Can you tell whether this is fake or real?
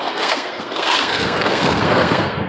fake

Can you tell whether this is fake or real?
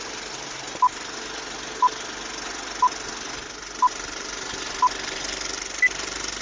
real